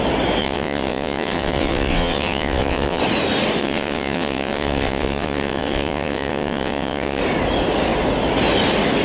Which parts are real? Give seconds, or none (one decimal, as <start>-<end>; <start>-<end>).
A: 0.0-0.4; 3.0-3.6; 7.2-9.0